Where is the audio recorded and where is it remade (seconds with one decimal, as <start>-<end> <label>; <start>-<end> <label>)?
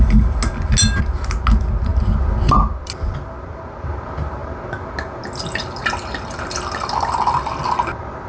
0.0-8.3 recorded